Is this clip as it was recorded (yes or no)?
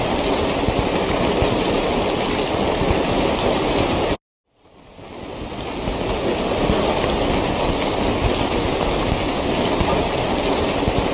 yes